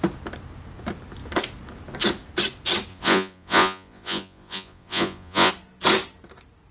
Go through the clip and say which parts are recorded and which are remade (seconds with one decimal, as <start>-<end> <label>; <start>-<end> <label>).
0.0-2.9 recorded; 2.9-5.5 remade; 5.5-6.7 recorded